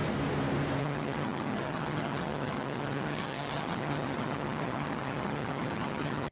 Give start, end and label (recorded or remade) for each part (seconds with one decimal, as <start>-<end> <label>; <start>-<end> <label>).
0.0-0.8 recorded; 0.8-6.3 remade